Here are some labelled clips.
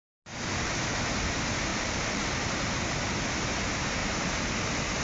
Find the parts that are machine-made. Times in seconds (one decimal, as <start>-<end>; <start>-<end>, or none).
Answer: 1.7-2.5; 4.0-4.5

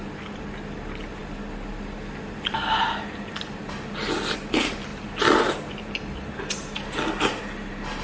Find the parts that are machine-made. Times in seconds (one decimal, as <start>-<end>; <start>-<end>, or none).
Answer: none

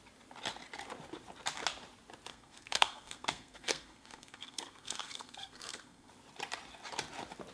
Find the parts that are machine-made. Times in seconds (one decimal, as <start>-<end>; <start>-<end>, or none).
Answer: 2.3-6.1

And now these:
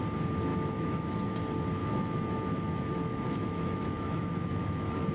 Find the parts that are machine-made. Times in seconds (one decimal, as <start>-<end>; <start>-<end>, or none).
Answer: 0.5-1.4; 1.8-5.1

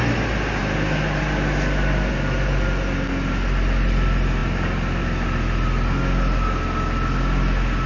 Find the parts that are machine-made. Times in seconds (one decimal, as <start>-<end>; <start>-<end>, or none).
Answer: none

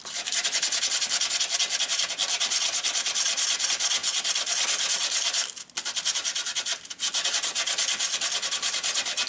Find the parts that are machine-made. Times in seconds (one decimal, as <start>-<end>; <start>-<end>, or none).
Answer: none

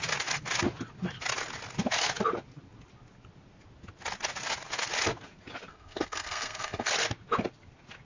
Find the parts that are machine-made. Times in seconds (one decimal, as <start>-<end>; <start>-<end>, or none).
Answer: 5.7-6.9

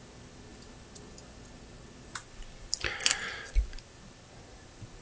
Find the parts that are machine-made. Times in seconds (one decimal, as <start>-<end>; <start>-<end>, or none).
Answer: none